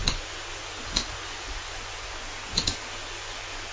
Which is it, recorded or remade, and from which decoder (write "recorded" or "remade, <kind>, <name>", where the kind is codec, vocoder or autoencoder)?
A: remade, vocoder, Vocos